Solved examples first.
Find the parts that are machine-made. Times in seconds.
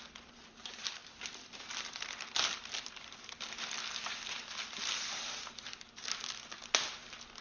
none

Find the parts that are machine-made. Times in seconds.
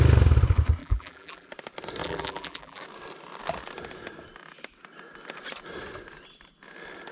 0.8-1.5 (vocoder, BigVGAN v2); 2.0-2.8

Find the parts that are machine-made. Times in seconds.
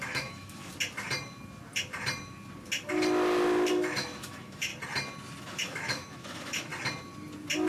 0.0-0.7 (autoencoder, DAC-VAE); 3.7-4.7; 5.4-6.7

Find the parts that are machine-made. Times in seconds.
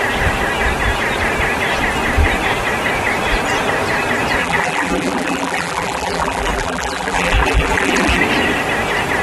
4.4-8.2 (vocoder, BigVGAN v2)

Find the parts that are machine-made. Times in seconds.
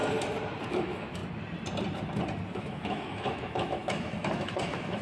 0.7-1.2 (autoencoder, DAC-VAE); 2.6-5.0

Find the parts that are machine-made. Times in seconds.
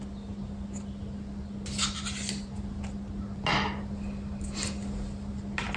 none